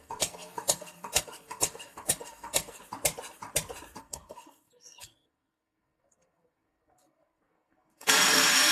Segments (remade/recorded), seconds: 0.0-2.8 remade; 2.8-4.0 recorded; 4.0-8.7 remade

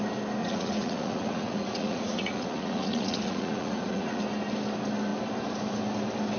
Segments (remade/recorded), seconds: 0.0-0.4 recorded; 0.4-4.2 remade; 4.2-6.4 recorded